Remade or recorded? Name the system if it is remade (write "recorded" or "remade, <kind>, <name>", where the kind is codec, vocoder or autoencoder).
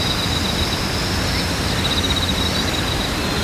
recorded